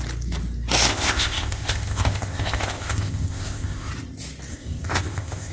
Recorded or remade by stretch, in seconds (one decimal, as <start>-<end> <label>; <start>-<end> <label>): 0.0-0.9 recorded; 0.9-3.9 remade; 3.9-4.5 recorded; 4.5-5.5 remade